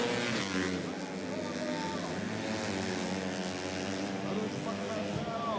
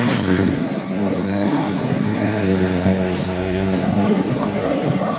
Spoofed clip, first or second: second